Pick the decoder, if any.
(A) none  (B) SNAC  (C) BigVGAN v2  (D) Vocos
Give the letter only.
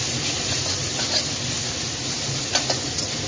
A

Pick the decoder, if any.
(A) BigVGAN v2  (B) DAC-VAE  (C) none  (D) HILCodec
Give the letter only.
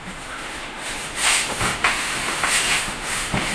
B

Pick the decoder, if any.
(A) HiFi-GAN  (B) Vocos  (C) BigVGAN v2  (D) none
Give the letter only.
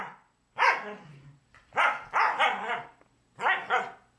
D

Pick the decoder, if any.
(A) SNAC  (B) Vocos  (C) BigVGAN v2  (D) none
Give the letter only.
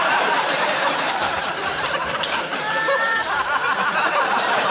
C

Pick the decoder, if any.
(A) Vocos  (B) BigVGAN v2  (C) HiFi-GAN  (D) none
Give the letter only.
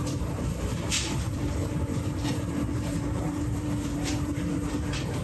B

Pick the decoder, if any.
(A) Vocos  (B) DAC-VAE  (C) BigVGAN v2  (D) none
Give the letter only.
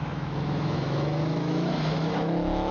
B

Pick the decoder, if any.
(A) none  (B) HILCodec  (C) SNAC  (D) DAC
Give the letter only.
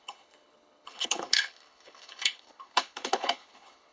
B